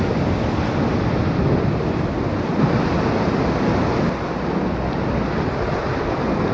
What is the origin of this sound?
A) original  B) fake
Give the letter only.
A